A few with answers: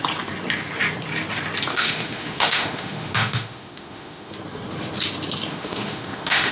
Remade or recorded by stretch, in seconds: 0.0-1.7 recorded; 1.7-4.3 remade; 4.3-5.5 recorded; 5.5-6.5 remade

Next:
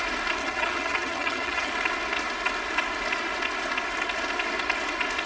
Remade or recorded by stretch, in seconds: 0.0-0.4 recorded; 0.4-1.7 remade; 1.7-5.3 recorded

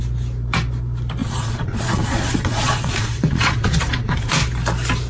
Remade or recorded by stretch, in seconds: 0.0-1.2 recorded; 1.2-4.3 remade; 4.3-5.1 recorded

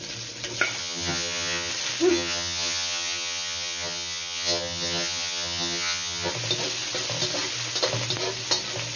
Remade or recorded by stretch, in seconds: 0.0-0.8 recorded; 0.8-1.7 remade; 1.7-2.1 recorded; 2.1-6.3 remade; 6.3-9.0 recorded

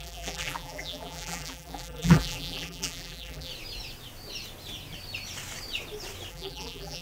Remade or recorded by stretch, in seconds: 0.0-3.5 remade; 3.5-6.3 recorded; 6.3-7.0 remade

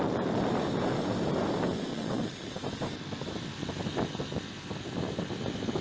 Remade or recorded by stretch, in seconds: 0.0-1.9 recorded; 1.9-2.5 remade; 2.5-5.8 recorded

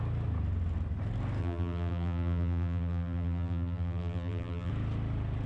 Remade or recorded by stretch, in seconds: 0.0-1.4 recorded; 1.4-4.7 remade; 4.7-5.5 recorded